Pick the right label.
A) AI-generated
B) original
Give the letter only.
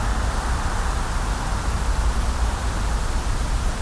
B